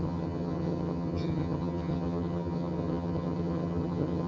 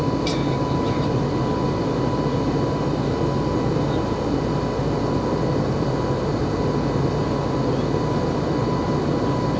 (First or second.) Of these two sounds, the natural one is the second